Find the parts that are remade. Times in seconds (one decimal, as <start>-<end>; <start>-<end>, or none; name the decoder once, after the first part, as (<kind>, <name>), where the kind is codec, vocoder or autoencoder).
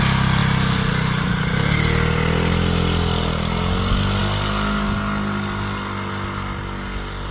none